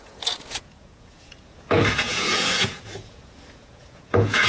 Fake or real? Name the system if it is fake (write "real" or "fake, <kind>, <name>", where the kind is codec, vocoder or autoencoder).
fake, vocoder, Vocos